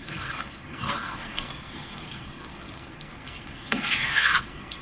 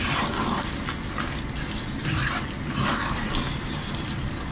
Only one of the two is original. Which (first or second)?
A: second